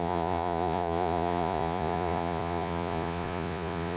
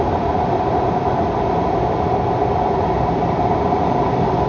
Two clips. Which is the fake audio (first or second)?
first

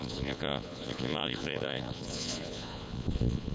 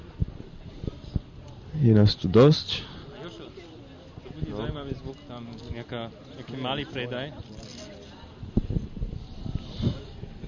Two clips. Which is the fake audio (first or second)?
first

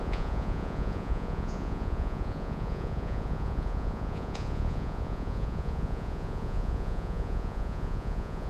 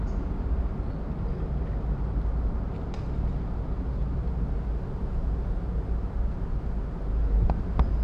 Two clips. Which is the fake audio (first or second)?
first